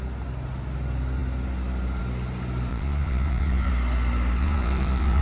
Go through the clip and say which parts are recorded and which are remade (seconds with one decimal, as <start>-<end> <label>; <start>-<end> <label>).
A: 0.0-2.7 recorded; 2.7-3.7 remade; 3.7-4.4 recorded; 4.4-5.2 remade